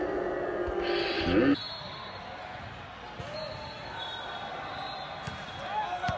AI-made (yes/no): no